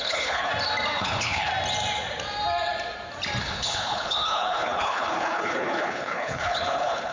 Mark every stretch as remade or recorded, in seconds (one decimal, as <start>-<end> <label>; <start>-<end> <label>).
0.0-0.5 remade; 0.5-1.0 recorded; 1.0-1.5 remade; 1.5-3.4 recorded; 3.4-7.1 remade